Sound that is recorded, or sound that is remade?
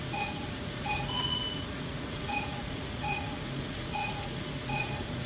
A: remade